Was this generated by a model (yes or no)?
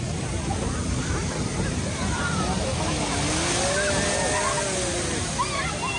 no